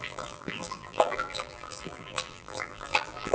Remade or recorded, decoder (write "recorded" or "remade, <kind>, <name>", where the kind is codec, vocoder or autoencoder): remade, vocoder, BigVGAN v2